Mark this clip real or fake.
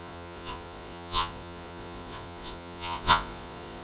fake